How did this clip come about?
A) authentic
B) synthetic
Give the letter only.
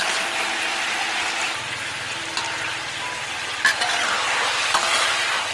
A